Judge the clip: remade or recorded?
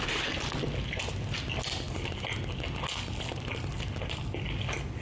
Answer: recorded